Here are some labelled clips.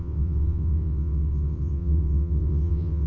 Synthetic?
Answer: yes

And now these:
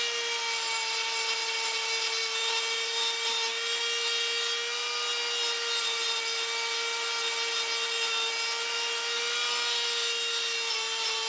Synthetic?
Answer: no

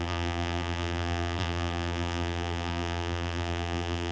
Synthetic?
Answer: yes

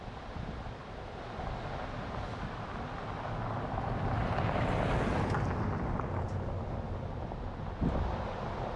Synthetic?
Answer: no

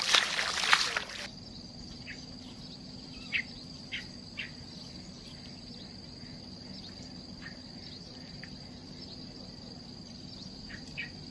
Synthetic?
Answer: no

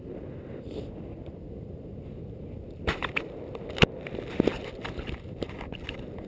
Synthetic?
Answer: no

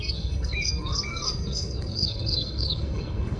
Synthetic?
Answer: yes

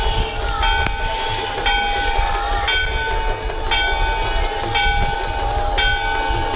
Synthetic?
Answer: no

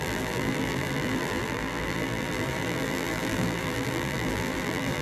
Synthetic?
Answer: yes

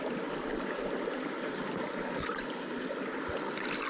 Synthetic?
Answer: no